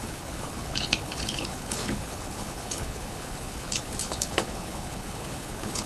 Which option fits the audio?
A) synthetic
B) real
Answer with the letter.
A